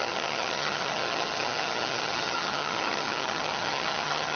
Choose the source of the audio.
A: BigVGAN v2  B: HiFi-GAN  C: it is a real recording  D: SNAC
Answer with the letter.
B